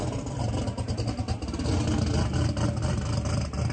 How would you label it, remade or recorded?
recorded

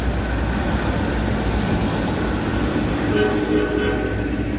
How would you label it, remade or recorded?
recorded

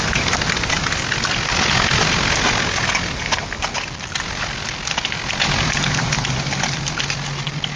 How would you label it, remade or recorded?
recorded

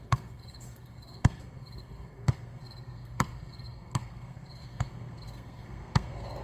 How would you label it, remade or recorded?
remade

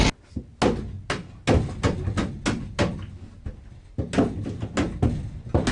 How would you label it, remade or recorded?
recorded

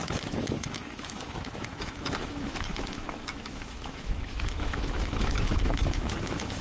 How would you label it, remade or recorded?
remade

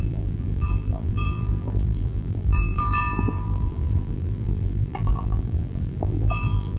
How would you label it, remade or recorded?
remade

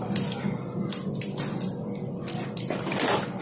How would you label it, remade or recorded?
recorded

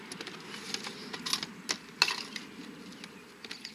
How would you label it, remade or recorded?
recorded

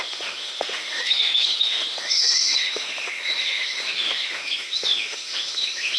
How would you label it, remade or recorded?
remade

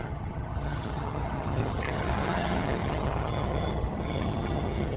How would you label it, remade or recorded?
remade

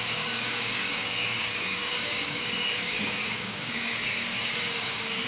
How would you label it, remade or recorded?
remade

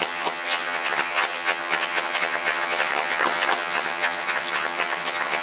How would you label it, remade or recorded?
remade